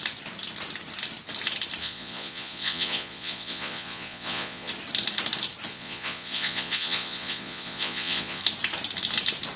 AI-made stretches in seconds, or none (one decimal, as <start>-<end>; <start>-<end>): 1.8-4.7; 5.7-8.4